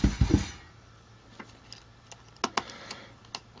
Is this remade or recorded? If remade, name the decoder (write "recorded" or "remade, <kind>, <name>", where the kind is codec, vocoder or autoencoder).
recorded